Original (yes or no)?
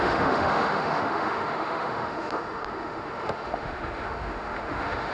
no